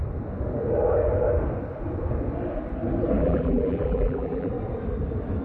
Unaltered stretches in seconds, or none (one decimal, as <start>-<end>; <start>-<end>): 0.0-3.2; 4.5-5.4